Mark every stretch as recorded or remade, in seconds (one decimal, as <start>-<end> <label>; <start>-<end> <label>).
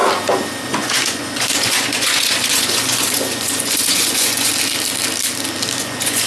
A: 0.0-0.7 recorded; 0.7-4.5 remade; 4.5-5.8 recorded; 5.8-6.3 remade